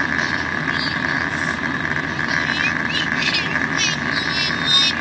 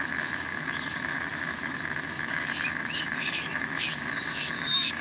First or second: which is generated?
second